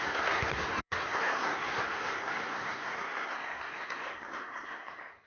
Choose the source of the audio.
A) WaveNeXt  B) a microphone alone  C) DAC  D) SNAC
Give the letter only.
D